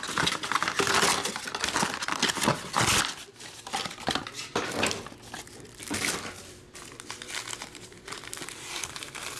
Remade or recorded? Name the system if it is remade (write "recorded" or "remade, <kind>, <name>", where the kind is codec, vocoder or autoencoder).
recorded